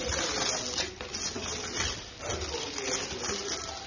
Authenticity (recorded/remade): recorded